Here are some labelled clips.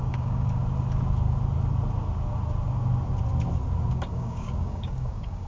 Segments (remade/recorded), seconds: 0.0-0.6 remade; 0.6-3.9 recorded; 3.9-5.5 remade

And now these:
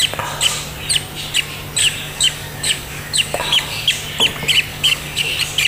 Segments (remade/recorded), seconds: 0.0-1.8 recorded; 1.8-3.9 remade; 3.9-4.7 recorded; 4.7-5.3 remade; 5.3-5.7 recorded

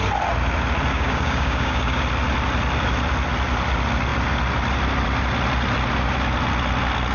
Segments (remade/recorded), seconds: 0.0-0.9 recorded; 0.9-2.0 remade; 2.0-7.1 recorded